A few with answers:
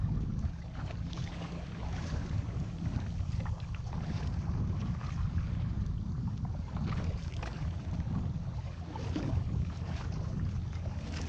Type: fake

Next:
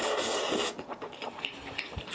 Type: real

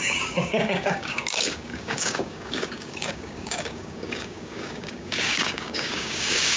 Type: fake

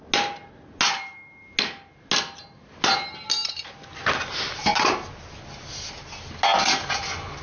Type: real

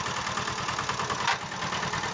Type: real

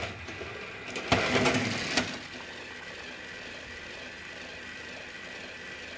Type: real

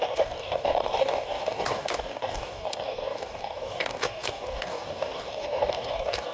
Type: fake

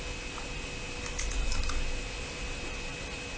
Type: real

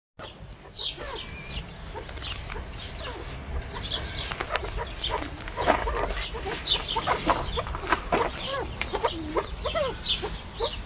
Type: real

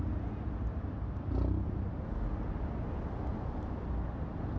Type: real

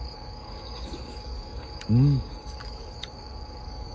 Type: fake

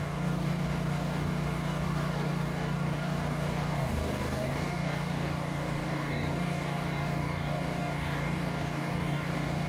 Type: fake